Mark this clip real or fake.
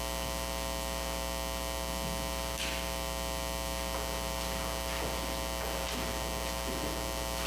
real